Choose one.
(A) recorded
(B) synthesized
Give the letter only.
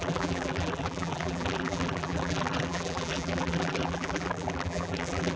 B